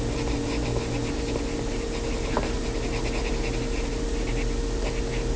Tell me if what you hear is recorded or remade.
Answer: recorded